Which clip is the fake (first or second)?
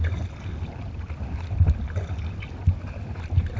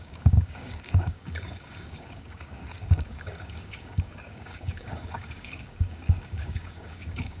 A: second